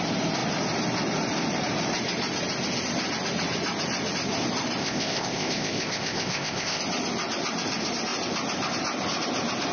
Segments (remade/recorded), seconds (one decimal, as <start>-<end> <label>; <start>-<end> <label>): 0.0-4.8 recorded; 4.8-6.8 remade; 6.8-9.7 recorded